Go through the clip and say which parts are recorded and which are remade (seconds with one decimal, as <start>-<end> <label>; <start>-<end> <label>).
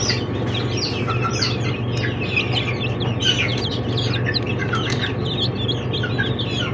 0.0-6.7 recorded